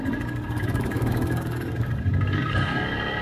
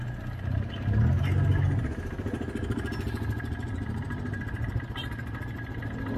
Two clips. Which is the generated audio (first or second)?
first